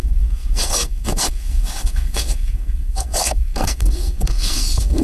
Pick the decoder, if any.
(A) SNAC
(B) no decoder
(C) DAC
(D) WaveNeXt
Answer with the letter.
A